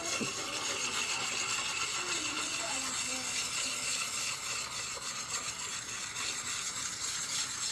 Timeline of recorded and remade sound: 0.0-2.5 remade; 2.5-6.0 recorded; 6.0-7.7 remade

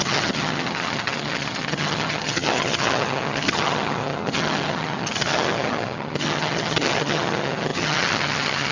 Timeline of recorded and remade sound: 0.0-8.7 remade

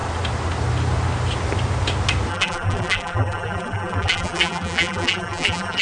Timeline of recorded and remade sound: 0.0-2.3 recorded; 2.3-5.8 remade

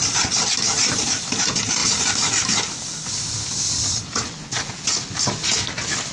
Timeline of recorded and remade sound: 0.0-6.1 recorded

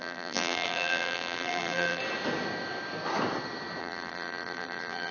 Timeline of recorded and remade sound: 0.0-2.0 remade; 2.0-3.8 recorded; 3.8-5.1 remade